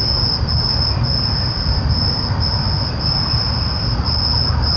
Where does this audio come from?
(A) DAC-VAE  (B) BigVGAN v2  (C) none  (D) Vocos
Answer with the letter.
C